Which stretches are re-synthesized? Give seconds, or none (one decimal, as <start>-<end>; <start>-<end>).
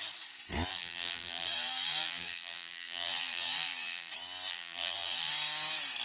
0.7-4.1; 4.5-5.3